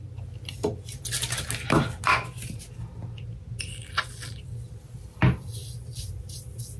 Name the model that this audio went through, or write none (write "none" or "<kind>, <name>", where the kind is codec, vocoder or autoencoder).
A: none